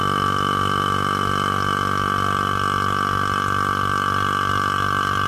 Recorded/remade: recorded